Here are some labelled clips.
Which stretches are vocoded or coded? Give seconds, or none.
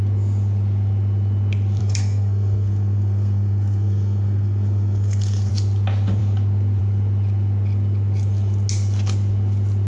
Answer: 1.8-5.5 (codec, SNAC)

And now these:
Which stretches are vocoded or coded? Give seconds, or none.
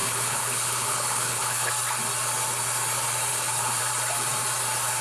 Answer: 0.0-1.7 (codec, HILCodec); 3.3-3.8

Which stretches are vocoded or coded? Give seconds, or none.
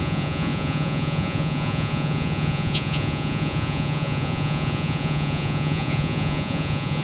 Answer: 0.0-7.0 (vocoder, Vocos)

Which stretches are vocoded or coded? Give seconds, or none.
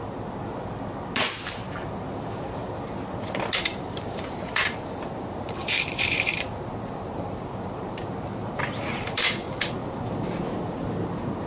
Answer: 1.6-2.8 (vocoder, BigVGAN v2); 3.7-8.6; 9.8-10.7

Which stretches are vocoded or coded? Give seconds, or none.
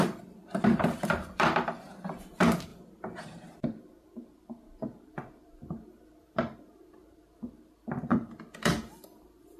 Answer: 0.0-2.7 (vocoder, BigVGAN v2); 6.9-9.6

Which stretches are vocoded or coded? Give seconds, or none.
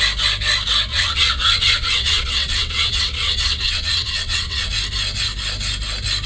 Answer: 0.9-4.7 (vocoder, WaveNeXt)